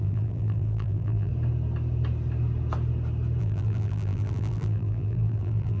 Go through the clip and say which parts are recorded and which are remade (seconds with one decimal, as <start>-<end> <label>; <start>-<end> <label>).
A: 0.0-1.3 remade; 1.3-3.4 recorded; 3.4-5.8 remade